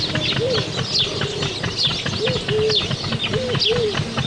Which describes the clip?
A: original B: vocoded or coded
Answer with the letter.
A